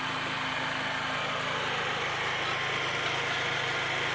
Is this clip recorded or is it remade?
remade